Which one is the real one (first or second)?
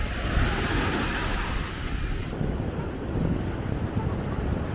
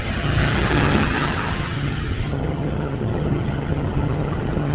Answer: first